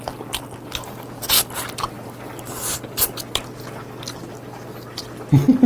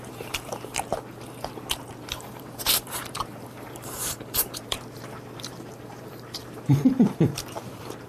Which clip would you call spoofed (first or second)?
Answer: second